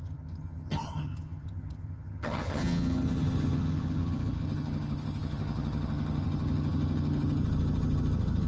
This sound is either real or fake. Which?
fake